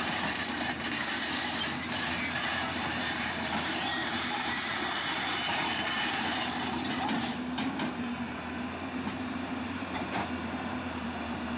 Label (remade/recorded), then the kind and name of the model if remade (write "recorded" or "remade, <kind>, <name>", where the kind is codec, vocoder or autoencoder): remade, vocoder, BigVGAN v2